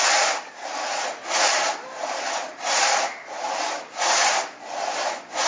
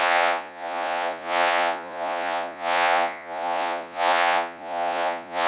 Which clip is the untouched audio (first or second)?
first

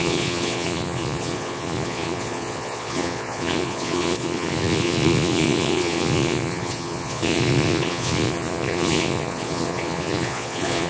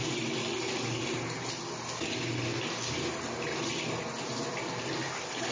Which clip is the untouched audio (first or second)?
second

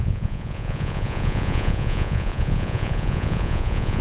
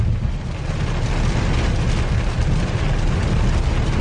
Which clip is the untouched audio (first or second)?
second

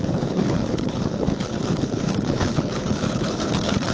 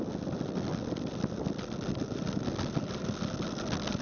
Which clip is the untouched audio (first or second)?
second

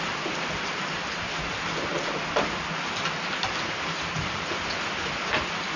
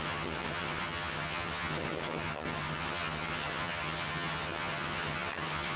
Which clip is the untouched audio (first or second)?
first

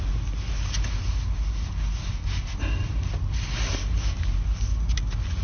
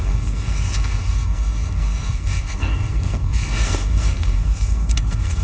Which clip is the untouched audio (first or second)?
first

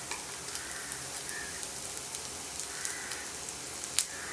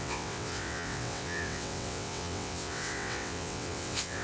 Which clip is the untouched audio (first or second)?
first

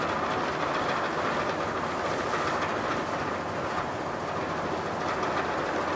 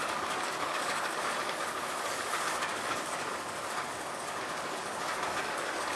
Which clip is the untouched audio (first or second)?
first